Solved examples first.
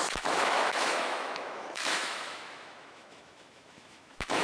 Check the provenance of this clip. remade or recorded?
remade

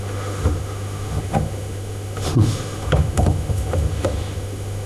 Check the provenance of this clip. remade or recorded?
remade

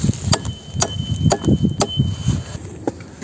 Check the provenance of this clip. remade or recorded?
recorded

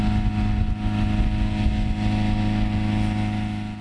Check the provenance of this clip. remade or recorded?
recorded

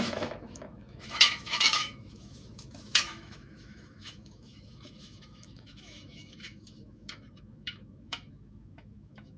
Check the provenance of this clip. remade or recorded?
remade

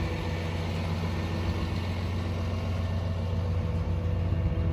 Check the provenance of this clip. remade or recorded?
recorded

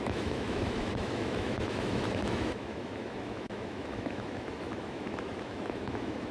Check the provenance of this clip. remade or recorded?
remade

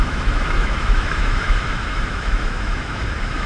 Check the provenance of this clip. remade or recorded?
remade